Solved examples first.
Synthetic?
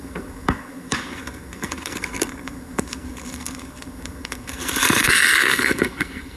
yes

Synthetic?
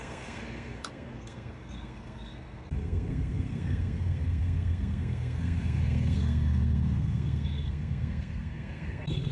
yes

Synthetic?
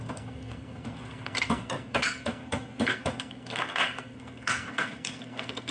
yes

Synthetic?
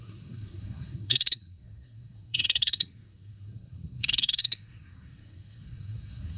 yes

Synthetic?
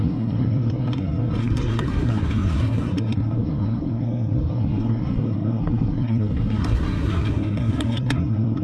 yes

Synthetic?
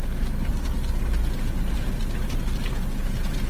no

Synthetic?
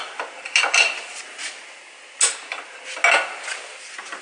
no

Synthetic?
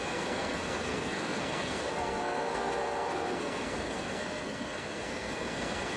yes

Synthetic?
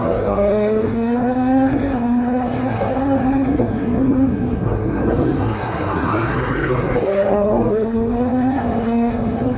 yes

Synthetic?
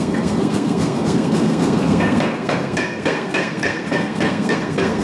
yes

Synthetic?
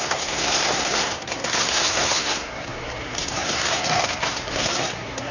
yes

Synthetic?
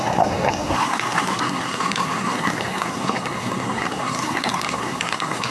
yes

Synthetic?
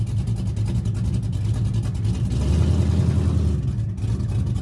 no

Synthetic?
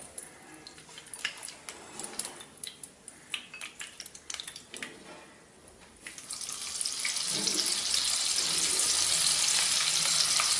no